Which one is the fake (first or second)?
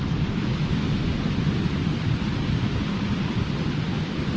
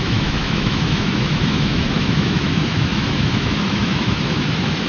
second